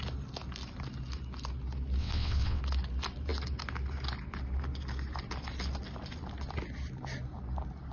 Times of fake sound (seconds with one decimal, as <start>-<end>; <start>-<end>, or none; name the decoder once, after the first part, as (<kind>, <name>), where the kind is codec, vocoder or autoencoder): 2.0-2.6 (vocoder, WaveNeXt)